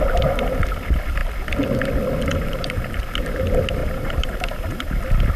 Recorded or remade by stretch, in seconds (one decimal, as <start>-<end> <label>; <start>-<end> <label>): 0.0-2.3 recorded; 2.3-3.0 remade; 3.0-3.8 recorded; 3.8-5.0 remade; 5.0-5.4 recorded